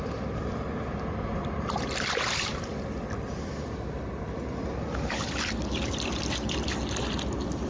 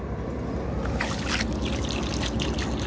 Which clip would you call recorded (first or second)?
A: second